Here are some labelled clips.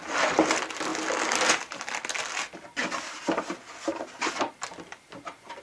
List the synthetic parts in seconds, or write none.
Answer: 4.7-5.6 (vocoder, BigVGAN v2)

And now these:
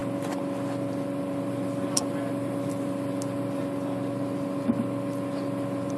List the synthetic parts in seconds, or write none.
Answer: 0.0-3.6 (vocoder, BigVGAN v2)

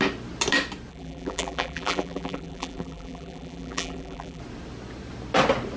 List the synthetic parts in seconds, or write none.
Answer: 0.9-4.4 (vocoder, BigVGAN v2)

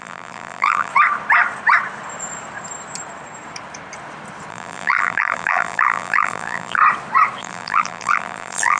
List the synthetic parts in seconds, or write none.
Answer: 0.0-0.9 (vocoder, BigVGAN v2); 4.5-6.8; 7.4-8.8